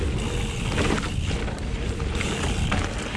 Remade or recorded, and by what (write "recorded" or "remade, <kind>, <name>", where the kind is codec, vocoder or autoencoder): recorded